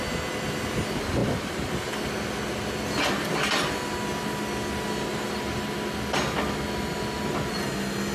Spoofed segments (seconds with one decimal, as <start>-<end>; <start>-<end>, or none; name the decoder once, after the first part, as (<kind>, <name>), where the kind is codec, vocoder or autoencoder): none